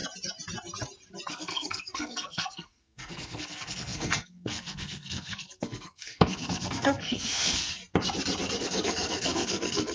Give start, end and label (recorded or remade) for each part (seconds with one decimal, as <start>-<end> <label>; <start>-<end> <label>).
0.0-1.3 recorded; 1.3-7.8 remade; 7.8-8.6 recorded; 8.6-9.9 remade